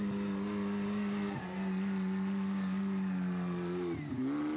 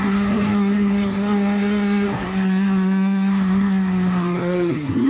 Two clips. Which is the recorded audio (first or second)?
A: first